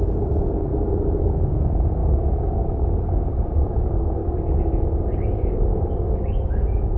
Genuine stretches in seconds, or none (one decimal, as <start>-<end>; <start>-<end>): 0.7-1.2